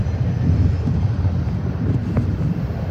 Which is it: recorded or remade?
recorded